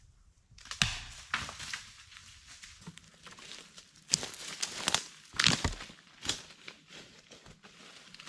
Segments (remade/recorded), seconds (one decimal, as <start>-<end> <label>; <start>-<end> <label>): 0.0-8.3 recorded